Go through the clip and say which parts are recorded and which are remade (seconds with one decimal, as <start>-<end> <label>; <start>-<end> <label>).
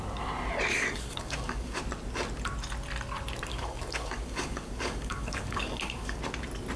0.0-0.7 recorded; 0.7-1.8 remade; 1.8-3.5 recorded; 3.5-6.2 remade; 6.2-6.8 recorded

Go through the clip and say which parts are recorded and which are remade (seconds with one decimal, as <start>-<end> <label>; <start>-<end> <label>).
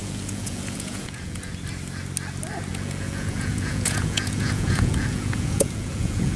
0.0-1.5 remade; 1.5-2.7 recorded; 2.7-6.4 remade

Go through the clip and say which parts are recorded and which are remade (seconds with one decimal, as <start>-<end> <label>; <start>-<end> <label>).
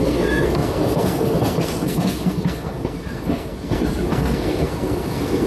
0.0-5.5 remade